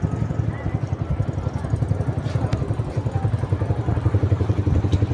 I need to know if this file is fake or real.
real